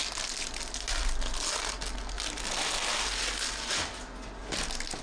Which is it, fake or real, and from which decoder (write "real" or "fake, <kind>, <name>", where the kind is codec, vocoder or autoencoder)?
real